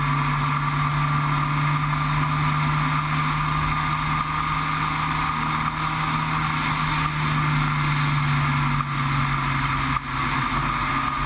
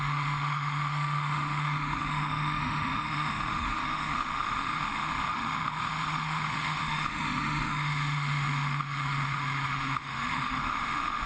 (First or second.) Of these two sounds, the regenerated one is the second